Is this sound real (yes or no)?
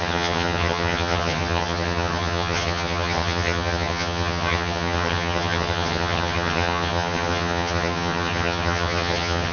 no